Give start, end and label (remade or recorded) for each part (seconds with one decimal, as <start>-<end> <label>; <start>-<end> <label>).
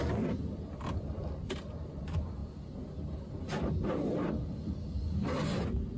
0.0-6.0 recorded